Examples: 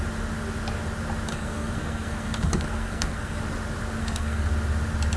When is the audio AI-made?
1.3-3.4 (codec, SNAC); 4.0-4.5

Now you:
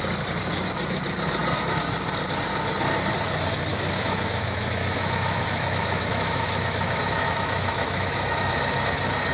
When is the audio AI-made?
3.7-8.5 (autoencoder, DAC-VAE)

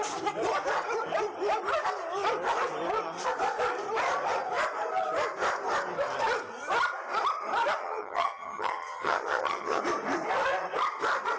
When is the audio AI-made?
7.8-9.8 (vocoder, HiFi-GAN)

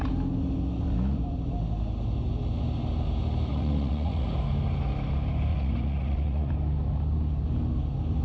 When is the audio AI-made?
3.5-4.3 (vocoder, Vocos); 5.5-6.5

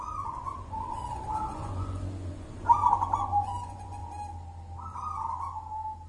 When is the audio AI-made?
0.0-4.0 (vocoder, Vocos)

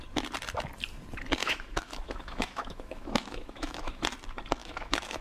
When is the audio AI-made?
1.4-4.0 (autoencoder, DAC-VAE); 4.6-5.2

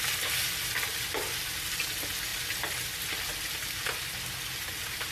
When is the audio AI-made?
none